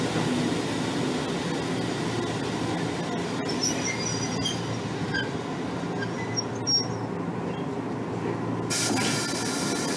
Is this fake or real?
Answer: real